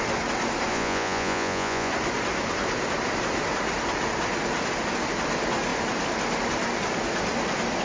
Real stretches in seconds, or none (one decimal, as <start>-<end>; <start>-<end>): 0.0-0.7; 1.9-7.8